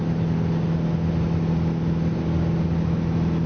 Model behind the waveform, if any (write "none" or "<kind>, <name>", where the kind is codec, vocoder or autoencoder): none